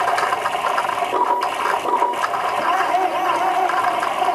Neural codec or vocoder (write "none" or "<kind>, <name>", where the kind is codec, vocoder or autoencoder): none